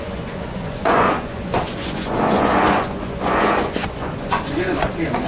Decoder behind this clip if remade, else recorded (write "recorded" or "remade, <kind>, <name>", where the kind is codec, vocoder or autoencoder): remade, vocoder, Vocos